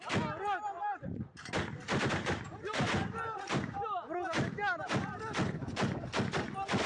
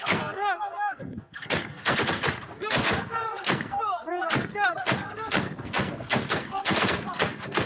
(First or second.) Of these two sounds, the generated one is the second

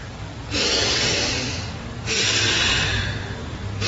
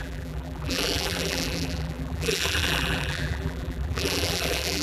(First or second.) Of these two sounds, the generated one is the second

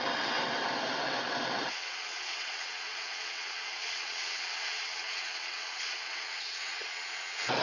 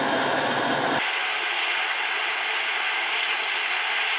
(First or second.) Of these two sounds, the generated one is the first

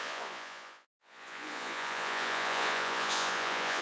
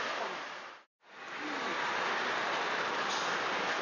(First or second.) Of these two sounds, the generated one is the first